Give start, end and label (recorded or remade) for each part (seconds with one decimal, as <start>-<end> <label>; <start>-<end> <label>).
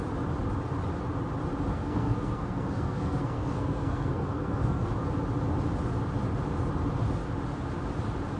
0.0-1.7 recorded; 1.7-4.9 remade; 4.9-8.4 recorded